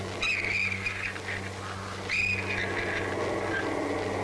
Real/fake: real